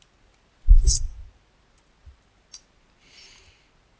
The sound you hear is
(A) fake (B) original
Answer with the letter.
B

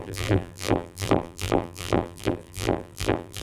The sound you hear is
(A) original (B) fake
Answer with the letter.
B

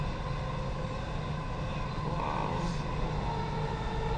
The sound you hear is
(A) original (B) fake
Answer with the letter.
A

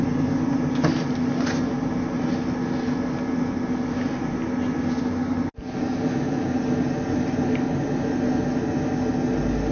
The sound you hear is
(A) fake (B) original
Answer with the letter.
B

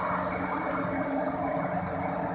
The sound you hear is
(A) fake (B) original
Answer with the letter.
B